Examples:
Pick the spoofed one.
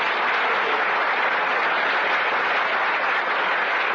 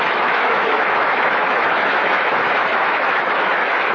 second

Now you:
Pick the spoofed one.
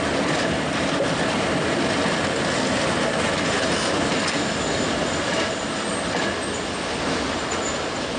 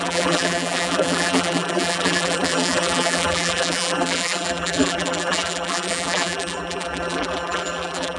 second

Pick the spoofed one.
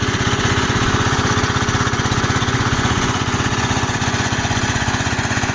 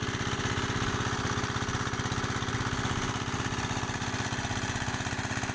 first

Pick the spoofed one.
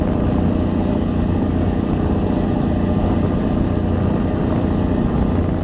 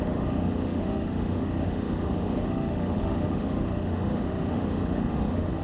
second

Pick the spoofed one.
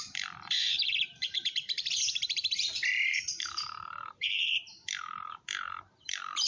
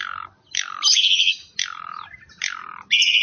first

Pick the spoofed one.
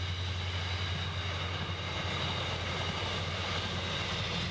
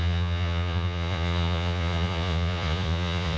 second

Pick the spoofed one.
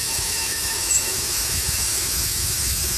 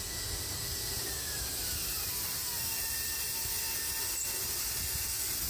first